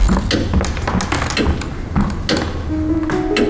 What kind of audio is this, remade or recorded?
recorded